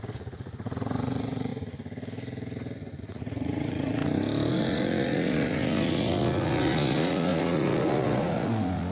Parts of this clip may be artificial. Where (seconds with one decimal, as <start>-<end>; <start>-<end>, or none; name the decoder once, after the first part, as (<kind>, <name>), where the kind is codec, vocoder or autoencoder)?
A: 0.0-1.5 (vocoder, Vocos); 3.0-4.0; 4.5-8.9